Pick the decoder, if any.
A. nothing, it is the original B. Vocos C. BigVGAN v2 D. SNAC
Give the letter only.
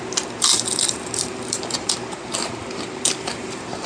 C